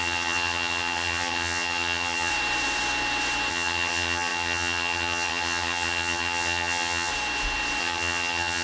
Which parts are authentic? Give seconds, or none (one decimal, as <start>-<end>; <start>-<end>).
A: 2.3-3.5; 7.1-7.8